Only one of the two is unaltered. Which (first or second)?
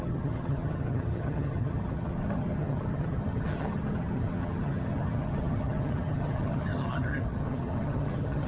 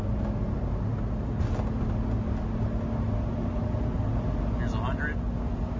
second